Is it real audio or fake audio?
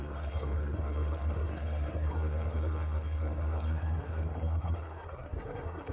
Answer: fake